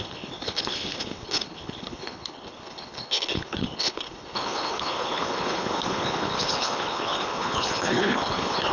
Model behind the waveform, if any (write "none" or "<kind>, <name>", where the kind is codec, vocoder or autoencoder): codec, HILCodec